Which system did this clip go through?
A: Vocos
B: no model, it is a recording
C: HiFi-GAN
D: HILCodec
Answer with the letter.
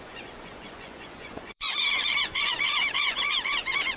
A